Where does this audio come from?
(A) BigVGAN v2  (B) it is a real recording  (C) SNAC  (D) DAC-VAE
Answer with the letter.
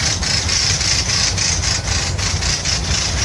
B